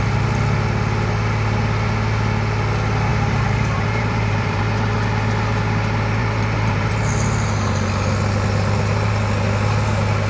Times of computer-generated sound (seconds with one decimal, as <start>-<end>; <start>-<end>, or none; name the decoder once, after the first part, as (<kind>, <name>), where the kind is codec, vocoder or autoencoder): 3.1-4.6 (vocoder, BigVGAN v2); 6.2-6.9